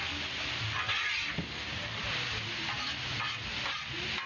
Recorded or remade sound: recorded